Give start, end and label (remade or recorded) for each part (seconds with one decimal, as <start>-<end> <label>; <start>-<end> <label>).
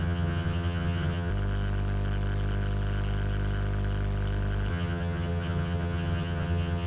0.0-1.3 remade; 1.3-4.7 recorded; 4.7-6.9 remade